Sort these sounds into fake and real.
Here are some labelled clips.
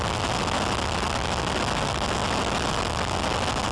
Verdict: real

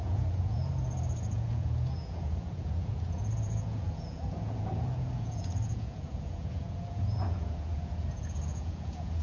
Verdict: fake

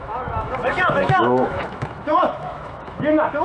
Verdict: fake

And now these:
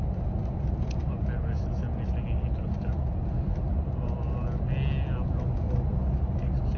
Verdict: real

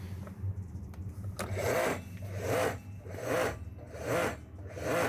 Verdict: real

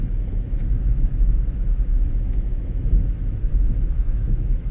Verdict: fake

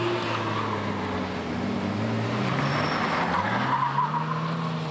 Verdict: real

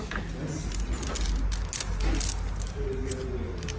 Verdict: real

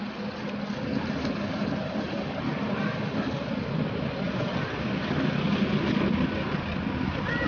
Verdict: real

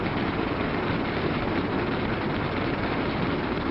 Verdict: real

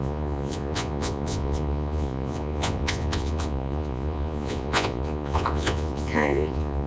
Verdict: fake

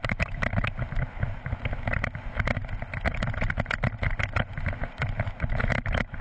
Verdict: real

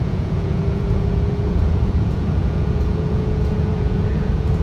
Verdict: fake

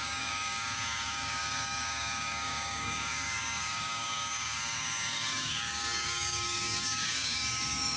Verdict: fake